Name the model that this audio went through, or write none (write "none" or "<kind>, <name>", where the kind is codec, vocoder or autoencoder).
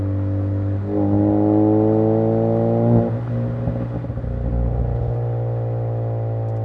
none